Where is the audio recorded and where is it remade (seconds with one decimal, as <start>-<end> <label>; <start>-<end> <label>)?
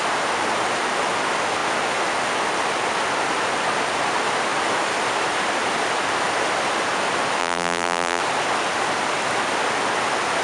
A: 0.0-7.4 recorded; 7.4-8.2 remade; 8.2-10.4 recorded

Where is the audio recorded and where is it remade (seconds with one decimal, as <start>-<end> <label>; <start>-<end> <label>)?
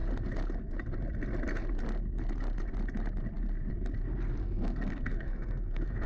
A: 0.0-4.4 recorded; 4.4-6.1 remade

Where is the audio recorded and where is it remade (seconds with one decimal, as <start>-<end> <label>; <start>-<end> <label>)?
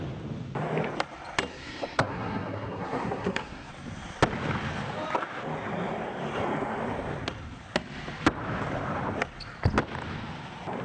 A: 0.0-1.5 recorded; 1.5-3.7 remade; 3.7-10.8 recorded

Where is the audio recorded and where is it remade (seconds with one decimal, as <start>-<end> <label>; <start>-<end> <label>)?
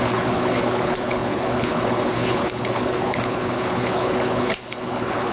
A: 0.0-5.3 remade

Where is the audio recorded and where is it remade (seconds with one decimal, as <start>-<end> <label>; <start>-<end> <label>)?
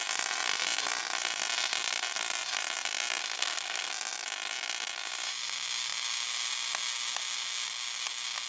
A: 0.0-3.2 recorded; 3.2-3.9 remade; 3.9-8.5 recorded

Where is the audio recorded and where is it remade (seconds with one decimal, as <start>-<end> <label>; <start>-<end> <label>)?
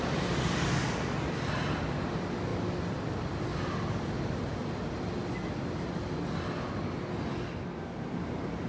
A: 0.0-8.7 recorded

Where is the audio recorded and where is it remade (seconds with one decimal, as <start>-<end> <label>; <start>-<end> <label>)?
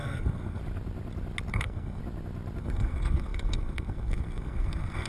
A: 0.0-0.6 remade; 0.6-1.5 recorded; 1.5-2.0 remade; 2.0-2.6 recorded; 2.6-5.1 remade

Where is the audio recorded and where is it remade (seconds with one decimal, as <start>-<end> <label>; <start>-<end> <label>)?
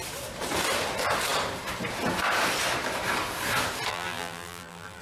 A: 0.0-3.9 recorded; 3.9-5.0 remade